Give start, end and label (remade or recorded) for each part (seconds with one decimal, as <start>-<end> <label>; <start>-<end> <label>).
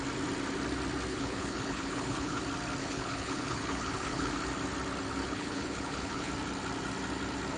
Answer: 0.0-1.1 recorded; 1.1-2.4 remade; 2.4-2.8 recorded; 2.8-4.3 remade; 4.3-5.2 recorded; 5.2-6.3 remade; 6.3-7.6 recorded